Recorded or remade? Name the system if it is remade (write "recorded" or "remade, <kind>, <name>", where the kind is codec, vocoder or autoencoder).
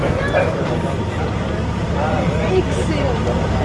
recorded